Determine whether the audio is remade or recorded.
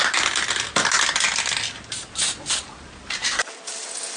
recorded